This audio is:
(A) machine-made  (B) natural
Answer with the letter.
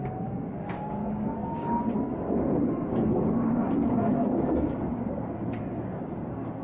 A